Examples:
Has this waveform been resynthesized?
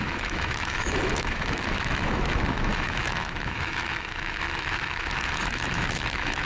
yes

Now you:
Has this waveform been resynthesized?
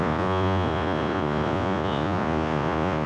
yes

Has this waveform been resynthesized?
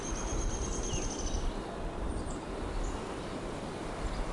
no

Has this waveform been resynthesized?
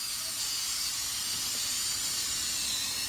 no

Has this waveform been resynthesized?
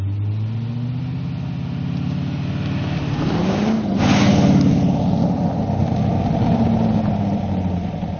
no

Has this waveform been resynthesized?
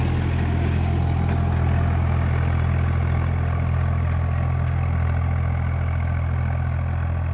no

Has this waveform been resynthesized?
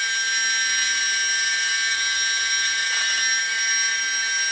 yes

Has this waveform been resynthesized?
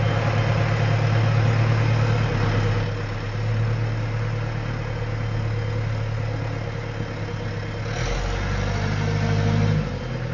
no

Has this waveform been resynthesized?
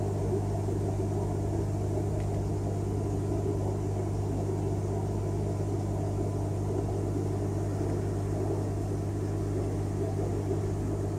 no